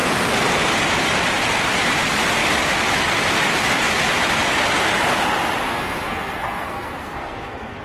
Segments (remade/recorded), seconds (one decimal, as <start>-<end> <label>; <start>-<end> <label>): 0.0-5.7 recorded; 5.7-7.8 remade